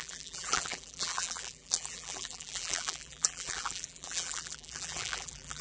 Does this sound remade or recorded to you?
remade